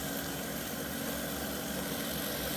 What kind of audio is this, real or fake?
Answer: real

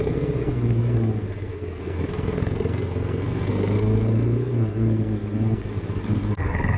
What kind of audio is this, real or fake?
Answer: fake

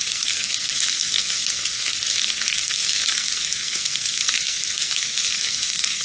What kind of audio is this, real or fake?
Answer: fake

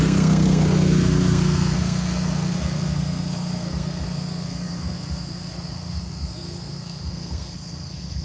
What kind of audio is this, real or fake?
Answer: fake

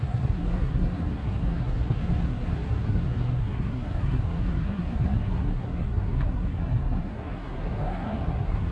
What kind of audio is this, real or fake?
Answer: fake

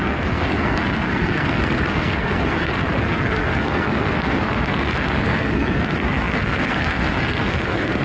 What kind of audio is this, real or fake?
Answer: fake